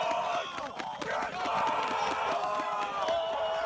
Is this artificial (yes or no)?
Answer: no